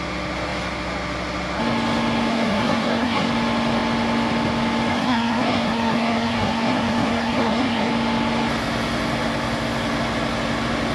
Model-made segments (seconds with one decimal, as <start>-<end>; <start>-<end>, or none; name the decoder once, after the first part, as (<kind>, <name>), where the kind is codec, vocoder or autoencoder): 2.3-3.3 (codec, SNAC); 4.9-7.9